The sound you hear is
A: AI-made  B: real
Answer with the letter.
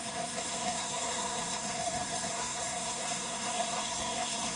A